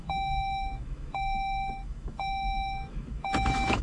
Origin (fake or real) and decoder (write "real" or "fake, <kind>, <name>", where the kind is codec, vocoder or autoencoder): fake, autoencoder, DAC-VAE